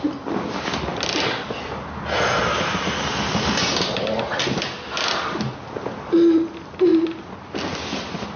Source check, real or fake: real